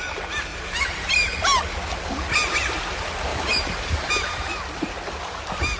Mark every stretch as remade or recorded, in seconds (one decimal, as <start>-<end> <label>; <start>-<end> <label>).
0.0-0.5 recorded; 0.5-1.0 remade; 1.0-3.3 recorded; 3.3-4.1 remade; 4.1-5.8 recorded